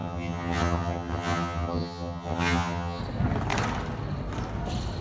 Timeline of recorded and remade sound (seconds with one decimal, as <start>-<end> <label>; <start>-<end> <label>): 0.0-3.0 remade; 3.0-5.0 recorded